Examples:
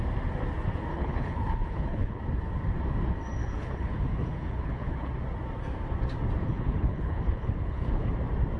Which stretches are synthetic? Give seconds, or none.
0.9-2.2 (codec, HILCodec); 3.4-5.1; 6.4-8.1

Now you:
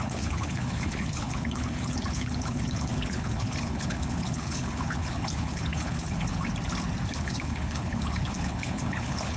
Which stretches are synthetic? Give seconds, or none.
0.0-6.5 (codec, HILCodec); 7.1-9.4

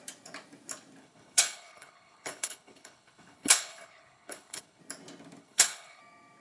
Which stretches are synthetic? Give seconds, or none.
1.0-4.8 (codec, HILCodec); 5.4-6.0

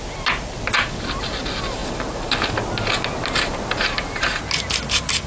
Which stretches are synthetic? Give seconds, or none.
none

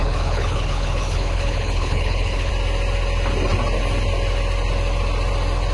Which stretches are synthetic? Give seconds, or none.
0.0-2.5 (codec, HILCodec)

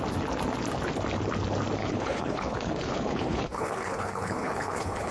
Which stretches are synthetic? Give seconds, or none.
1.8-5.1 (codec, HILCodec)

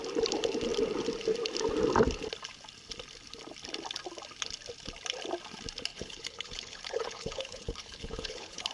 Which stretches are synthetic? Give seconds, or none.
5.9-8.7 (codec, HILCodec)

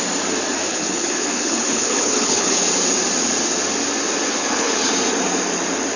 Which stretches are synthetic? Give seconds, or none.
0.7-2.7 (codec, HILCodec); 4.4-4.9